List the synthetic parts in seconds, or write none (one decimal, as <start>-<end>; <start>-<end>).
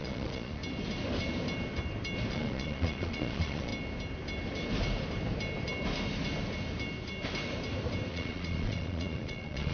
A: 0.0-0.6; 2.3-3.7; 8.1-9.7